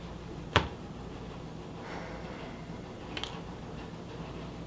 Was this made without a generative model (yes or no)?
yes